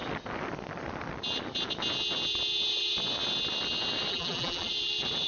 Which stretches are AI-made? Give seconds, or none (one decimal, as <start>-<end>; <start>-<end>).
4.1-4.7